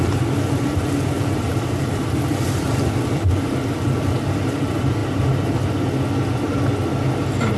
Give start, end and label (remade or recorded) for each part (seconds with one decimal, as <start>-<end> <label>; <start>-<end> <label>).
0.0-5.0 remade; 5.0-7.6 recorded